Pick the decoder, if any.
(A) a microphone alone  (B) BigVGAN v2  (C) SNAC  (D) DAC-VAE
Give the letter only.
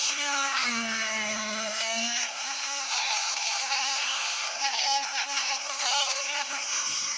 C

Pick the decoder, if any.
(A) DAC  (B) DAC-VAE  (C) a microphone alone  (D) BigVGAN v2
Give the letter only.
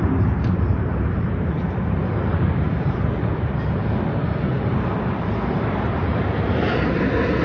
D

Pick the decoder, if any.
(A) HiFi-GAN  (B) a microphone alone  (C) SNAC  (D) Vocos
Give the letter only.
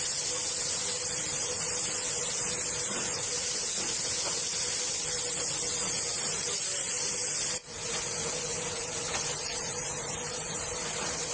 B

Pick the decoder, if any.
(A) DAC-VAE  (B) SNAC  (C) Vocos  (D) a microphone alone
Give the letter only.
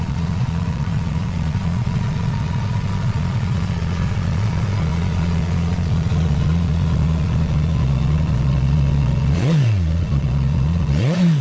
C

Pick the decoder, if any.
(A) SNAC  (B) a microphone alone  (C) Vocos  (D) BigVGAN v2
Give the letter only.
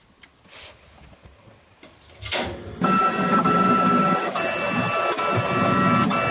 B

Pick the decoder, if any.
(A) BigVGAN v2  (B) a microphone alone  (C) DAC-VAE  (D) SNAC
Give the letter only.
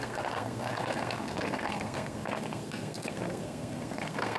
D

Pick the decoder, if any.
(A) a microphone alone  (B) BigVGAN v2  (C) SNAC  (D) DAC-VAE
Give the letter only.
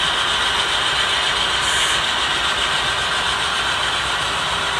A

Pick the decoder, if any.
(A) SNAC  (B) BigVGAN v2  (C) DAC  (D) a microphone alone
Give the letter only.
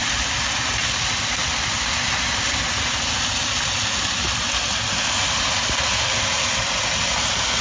D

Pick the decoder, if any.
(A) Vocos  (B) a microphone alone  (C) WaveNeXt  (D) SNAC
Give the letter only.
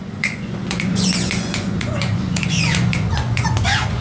A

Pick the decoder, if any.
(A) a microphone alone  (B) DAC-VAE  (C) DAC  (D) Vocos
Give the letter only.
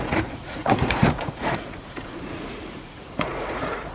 D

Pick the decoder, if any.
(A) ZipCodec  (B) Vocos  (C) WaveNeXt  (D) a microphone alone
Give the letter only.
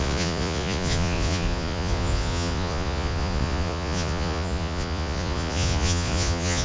B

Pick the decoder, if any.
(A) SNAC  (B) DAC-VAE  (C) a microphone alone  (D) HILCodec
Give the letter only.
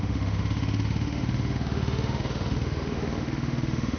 B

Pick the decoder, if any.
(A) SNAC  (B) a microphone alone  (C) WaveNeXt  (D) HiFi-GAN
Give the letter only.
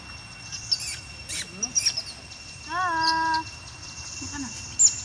B